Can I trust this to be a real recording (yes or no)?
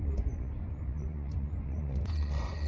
no